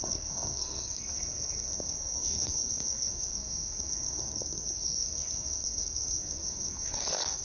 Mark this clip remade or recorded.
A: remade